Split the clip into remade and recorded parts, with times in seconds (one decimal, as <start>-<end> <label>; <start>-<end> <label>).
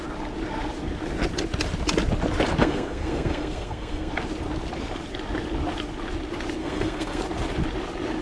0.0-2.6 recorded; 2.6-4.1 remade; 4.1-6.6 recorded; 6.6-7.2 remade; 7.2-8.2 recorded